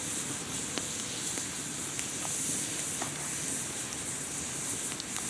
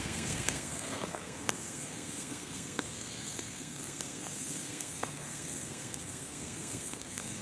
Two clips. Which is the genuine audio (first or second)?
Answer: first